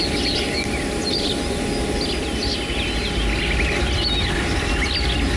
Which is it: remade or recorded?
recorded